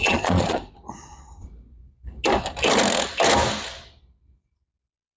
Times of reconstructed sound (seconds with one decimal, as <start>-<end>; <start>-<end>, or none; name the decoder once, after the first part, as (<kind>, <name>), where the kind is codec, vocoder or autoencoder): 0.0-1.8 (vocoder, Vocos)